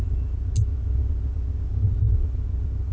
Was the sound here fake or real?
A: real